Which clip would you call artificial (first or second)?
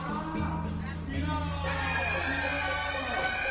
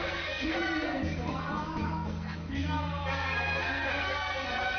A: second